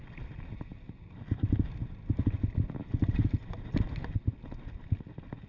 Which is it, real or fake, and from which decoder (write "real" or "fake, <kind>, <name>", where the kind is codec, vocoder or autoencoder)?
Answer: real